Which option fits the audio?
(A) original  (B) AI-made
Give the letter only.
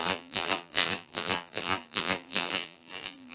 B